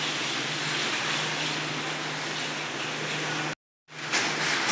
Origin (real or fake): real